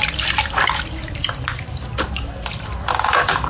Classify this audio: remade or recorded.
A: recorded